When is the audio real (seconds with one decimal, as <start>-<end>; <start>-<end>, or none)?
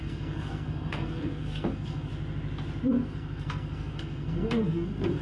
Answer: 2.1-2.9